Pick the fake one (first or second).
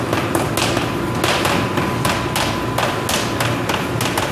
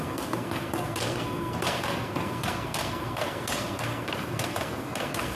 second